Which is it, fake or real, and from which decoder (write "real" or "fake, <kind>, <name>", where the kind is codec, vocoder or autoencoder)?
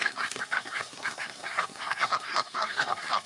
fake, codec, SNAC